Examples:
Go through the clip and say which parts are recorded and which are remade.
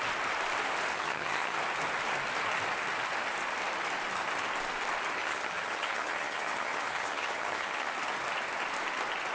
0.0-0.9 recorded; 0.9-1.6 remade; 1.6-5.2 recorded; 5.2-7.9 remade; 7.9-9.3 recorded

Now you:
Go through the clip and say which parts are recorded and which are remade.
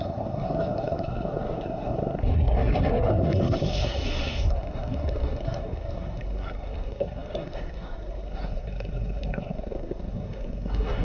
0.0-11.0 remade